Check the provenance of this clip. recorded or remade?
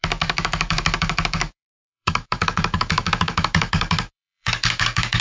remade